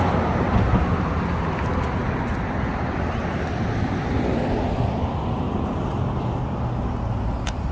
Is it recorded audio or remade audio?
recorded